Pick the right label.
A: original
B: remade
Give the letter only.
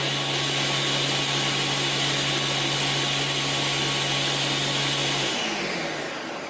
A